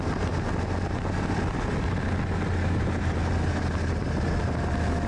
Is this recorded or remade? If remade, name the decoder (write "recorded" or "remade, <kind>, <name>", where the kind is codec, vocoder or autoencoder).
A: recorded